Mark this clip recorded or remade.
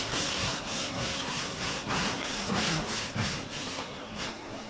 remade